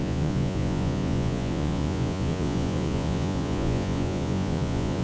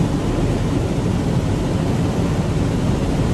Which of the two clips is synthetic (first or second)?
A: first